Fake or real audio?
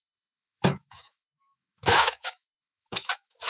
fake